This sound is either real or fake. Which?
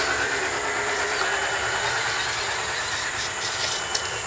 real